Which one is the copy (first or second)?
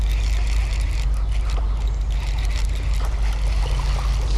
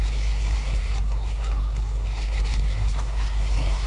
second